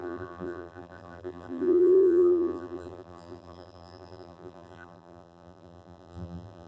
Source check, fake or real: fake